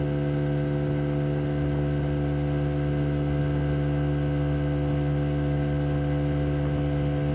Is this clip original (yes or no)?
yes